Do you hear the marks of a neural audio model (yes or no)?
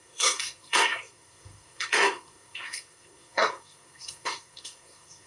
yes